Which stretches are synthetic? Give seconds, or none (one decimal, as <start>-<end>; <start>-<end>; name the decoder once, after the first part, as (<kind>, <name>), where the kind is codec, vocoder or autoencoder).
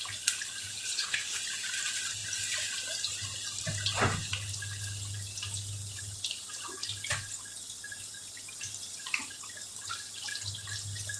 0.9-1.4 (codec, HILCodec)